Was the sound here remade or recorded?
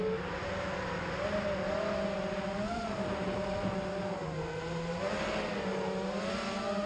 recorded